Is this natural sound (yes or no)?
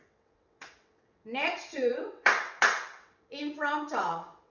no